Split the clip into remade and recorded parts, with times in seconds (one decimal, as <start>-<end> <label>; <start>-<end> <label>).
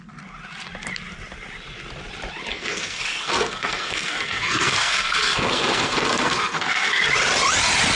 0.0-2.5 recorded; 2.5-7.0 remade; 7.0-7.9 recorded